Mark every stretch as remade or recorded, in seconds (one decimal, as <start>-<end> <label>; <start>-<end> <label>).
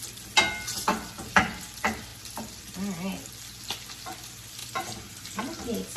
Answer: 0.0-4.6 recorded; 4.6-5.4 remade; 5.4-6.0 recorded